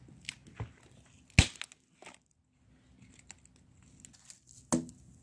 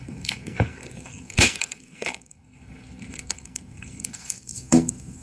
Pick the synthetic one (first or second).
second